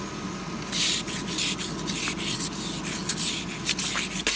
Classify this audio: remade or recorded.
recorded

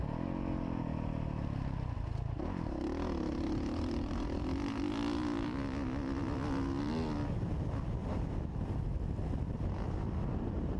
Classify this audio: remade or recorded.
recorded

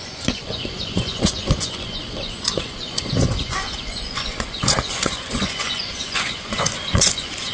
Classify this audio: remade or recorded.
remade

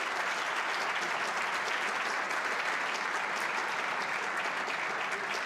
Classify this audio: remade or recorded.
recorded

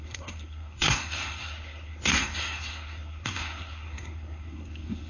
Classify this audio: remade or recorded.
remade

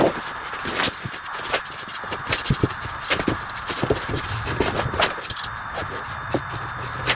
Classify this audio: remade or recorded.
recorded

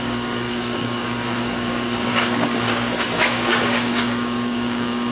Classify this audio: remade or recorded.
remade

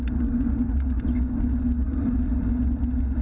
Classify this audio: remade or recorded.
recorded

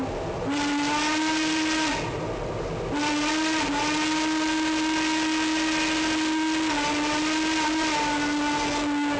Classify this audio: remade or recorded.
recorded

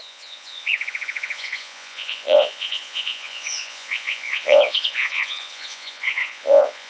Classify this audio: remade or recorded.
remade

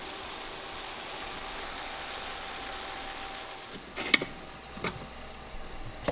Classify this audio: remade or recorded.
recorded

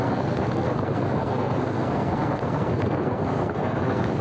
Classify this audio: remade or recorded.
remade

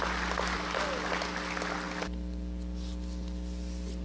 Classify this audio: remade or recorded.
recorded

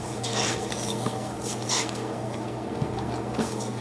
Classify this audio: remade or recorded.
remade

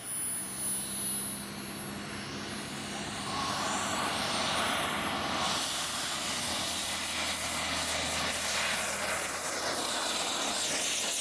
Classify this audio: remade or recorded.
recorded